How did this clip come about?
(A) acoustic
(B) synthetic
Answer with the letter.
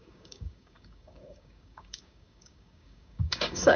B